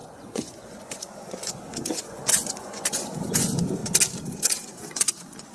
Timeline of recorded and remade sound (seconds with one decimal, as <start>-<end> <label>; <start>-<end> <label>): 0.0-3.8 remade; 3.8-4.4 recorded; 4.4-5.5 remade